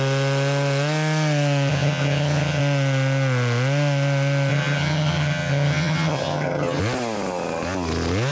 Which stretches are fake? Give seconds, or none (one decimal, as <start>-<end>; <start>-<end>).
1.7-2.6; 4.5-6.8

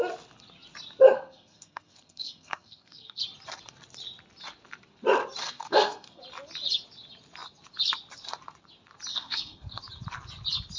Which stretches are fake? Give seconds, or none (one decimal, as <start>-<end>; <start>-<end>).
1.1-3.2; 5.4-6.2; 9.1-9.8

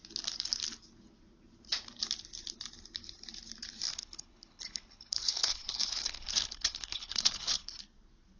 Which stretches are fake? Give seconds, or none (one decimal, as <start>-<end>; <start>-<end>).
3.9-7.8

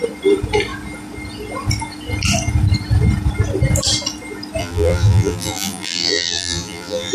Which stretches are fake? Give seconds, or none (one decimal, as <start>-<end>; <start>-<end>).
4.6-7.1